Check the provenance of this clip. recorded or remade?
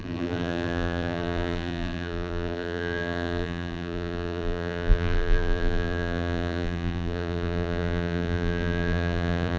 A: remade